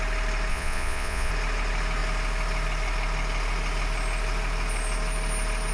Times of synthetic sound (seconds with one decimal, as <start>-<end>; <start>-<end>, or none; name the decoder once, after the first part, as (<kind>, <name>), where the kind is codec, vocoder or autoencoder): 0.5-1.3 (vocoder, Vocos)